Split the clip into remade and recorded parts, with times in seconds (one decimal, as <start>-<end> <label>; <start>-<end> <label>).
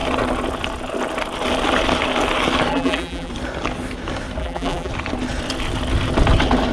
0.0-2.7 recorded; 2.7-3.3 remade; 3.3-4.4 recorded; 4.4-4.9 remade; 4.9-6.7 recorded